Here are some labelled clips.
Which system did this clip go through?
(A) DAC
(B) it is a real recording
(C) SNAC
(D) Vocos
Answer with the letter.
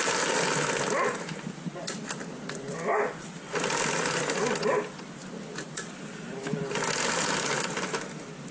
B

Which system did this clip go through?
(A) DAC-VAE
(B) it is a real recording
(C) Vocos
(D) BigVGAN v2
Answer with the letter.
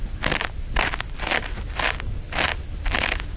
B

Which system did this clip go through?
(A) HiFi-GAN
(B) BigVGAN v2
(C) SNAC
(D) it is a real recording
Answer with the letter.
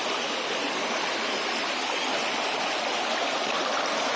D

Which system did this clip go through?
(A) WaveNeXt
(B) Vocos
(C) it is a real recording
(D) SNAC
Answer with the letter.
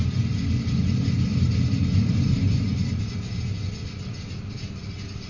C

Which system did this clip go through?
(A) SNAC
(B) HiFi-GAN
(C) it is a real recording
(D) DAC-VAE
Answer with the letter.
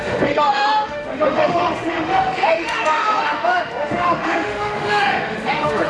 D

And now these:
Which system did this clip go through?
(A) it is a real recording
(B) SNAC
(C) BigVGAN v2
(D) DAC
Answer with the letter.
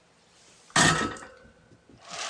A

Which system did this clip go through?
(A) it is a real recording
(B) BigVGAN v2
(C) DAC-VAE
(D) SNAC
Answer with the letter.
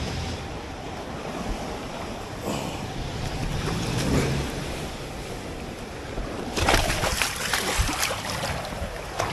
B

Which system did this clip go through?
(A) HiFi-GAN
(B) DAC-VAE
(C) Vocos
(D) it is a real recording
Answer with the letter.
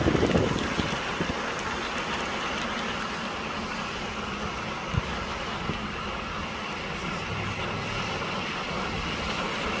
D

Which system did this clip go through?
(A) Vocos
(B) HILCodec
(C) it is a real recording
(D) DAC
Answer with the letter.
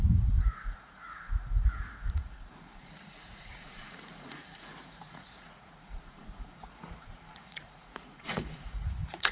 A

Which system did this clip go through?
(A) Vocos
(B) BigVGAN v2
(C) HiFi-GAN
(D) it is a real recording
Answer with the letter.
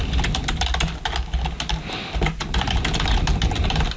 D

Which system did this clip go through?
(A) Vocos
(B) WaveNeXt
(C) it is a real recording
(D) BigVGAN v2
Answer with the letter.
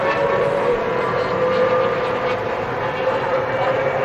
D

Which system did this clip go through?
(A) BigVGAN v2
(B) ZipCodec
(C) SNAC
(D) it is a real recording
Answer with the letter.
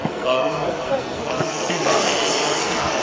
C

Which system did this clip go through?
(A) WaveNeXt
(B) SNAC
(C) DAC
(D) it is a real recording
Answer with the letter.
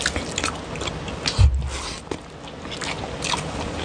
D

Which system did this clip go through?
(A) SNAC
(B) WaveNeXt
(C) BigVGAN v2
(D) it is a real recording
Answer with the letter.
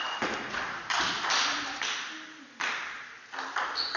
D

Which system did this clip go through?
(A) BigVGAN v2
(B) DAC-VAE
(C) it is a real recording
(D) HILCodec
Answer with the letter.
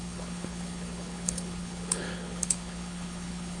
D